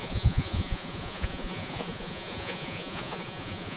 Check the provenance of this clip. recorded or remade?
remade